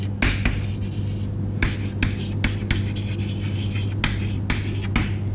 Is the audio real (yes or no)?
yes